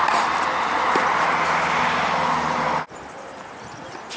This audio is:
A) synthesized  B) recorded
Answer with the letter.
B